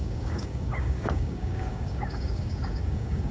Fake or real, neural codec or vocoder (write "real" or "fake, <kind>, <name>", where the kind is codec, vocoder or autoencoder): fake, codec, DAC